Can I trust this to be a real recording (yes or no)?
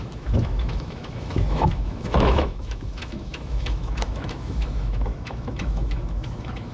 no